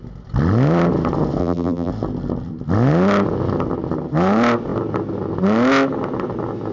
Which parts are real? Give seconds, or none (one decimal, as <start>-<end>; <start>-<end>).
0.0-1.4; 1.9-6.7